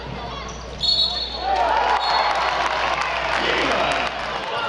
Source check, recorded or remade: recorded